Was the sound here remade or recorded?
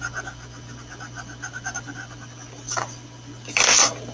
recorded